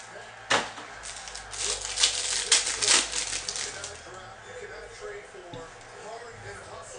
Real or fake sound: real